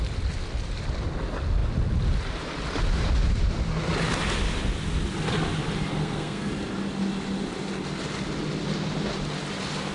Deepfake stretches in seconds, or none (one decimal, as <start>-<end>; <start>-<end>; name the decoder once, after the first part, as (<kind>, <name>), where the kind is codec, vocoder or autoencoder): 5.9-6.5 (codec, SNAC)

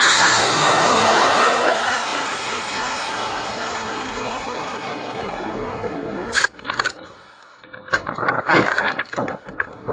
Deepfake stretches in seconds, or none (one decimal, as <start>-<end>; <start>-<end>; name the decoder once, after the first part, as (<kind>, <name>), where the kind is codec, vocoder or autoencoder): 0.0-9.9 (codec, SNAC)

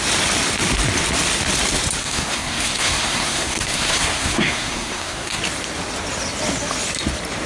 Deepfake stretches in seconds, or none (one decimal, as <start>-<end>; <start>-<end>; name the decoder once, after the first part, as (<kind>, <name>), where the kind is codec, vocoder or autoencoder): 2.0-5.4 (codec, SNAC)

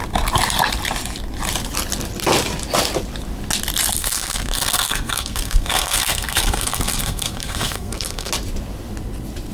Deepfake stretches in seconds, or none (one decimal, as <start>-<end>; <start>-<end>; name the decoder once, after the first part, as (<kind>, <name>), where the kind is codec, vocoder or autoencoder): 4.0-8.3 (codec, SNAC)

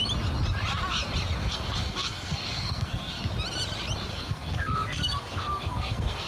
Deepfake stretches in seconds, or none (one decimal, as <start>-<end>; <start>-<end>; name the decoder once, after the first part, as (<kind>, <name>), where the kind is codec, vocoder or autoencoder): 1.4-3.2 (codec, SNAC); 4.1-6.3

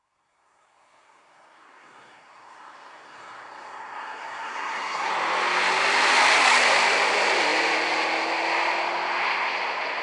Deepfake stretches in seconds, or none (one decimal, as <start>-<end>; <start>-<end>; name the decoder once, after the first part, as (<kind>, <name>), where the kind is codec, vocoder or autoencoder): 0.0-5.1 (codec, SNAC)

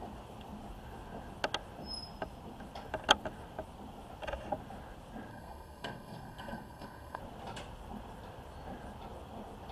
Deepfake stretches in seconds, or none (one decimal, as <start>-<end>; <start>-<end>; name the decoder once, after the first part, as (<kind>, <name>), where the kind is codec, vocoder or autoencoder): 5.3-7.2 (codec, SNAC)

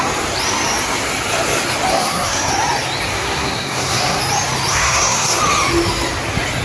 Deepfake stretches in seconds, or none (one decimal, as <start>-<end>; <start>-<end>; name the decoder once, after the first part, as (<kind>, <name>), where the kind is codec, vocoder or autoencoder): 1.9-2.5 (codec, SNAC); 3.1-4.2; 4.7-5.4